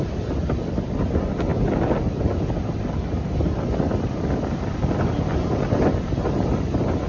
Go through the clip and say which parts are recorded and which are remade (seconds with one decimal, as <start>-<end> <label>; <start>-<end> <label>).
0.0-7.1 recorded